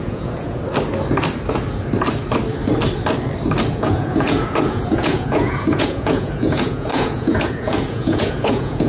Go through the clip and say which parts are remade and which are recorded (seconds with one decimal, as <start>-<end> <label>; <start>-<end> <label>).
0.0-0.6 remade; 0.6-3.7 recorded; 3.7-8.9 remade